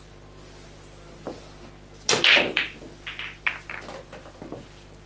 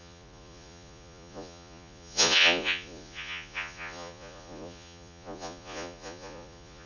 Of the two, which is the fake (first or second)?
second